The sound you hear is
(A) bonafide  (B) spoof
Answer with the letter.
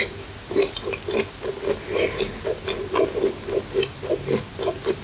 A